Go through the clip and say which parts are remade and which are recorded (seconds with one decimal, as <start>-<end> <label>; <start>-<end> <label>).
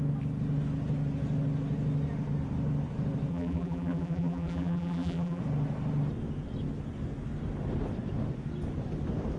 0.0-3.3 recorded; 3.3-5.4 remade; 5.4-9.4 recorded